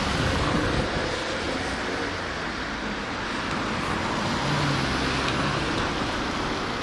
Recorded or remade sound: recorded